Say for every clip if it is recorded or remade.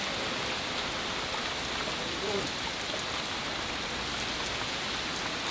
recorded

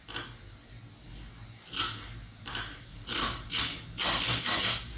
remade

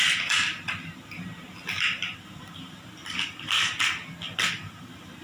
recorded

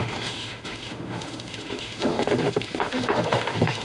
remade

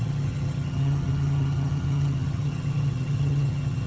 remade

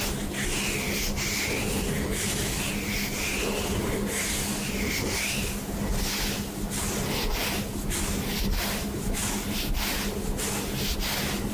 recorded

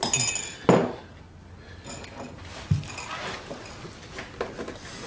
recorded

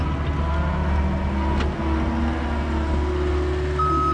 recorded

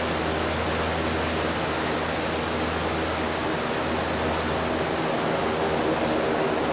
recorded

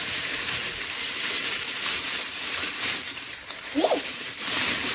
remade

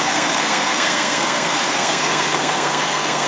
remade